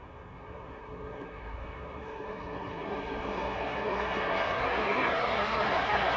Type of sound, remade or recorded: remade